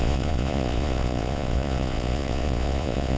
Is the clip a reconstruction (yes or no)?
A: yes